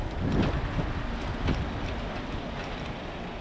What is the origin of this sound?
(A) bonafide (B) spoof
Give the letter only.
A